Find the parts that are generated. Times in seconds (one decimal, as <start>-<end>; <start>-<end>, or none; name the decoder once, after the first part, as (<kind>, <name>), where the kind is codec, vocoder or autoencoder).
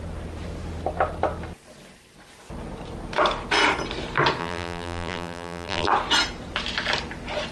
4.4-5.9 (vocoder, BigVGAN v2)